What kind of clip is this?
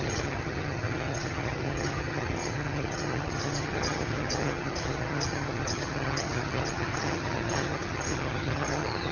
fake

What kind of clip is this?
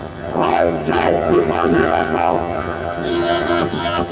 fake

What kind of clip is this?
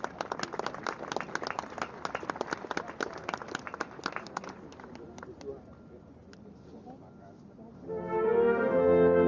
real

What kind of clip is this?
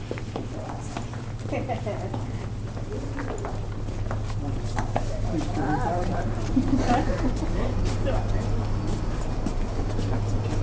real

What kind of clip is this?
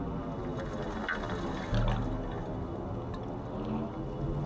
real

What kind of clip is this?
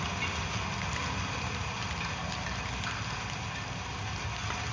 real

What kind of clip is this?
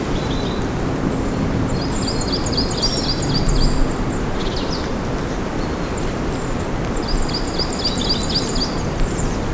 real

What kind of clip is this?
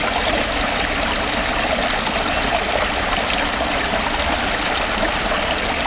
real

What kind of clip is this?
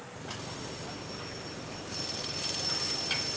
real